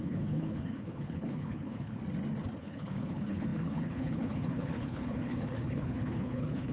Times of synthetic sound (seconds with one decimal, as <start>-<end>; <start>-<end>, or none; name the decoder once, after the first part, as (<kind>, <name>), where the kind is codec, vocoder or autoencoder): 0.0-2.0 (codec, HILCodec); 2.6-6.7